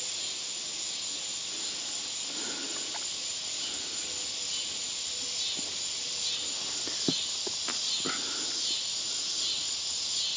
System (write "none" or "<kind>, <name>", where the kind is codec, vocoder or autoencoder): none